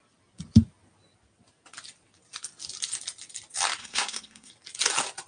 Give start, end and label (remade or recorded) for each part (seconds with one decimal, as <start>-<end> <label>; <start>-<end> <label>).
0.0-3.8 recorded; 3.8-4.5 remade; 4.5-5.3 recorded